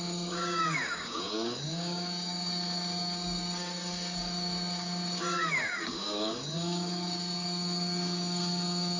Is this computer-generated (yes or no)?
yes